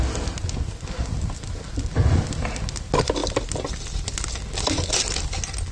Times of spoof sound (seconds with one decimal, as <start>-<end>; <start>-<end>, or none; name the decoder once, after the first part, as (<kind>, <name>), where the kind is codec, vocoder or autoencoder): none